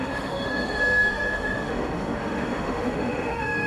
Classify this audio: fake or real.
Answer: fake